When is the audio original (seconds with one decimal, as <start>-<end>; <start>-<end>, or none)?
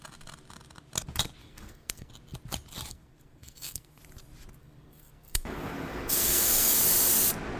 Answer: 0.0-1.4; 2.1-2.9; 4.0-4.6; 6.8-7.6